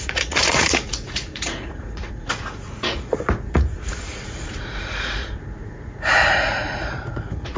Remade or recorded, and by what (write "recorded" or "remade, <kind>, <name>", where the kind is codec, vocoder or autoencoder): remade, vocoder, Vocos